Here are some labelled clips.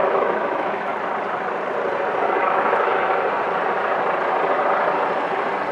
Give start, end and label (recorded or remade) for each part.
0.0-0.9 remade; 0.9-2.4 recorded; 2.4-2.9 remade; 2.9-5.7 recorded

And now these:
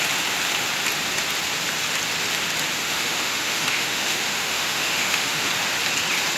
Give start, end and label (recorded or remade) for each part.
0.0-2.8 recorded; 2.8-5.5 remade; 5.5-6.4 recorded